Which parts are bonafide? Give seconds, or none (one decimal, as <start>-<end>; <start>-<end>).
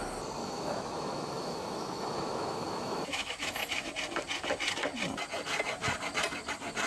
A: 0.0-0.4; 3.9-6.9